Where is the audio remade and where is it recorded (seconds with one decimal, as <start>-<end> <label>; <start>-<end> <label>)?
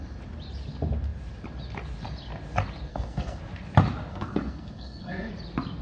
0.0-2.9 recorded; 2.9-3.4 remade; 3.4-4.1 recorded; 4.1-5.3 remade; 5.3-5.8 recorded